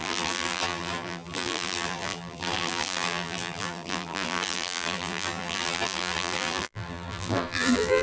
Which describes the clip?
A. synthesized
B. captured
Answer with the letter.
A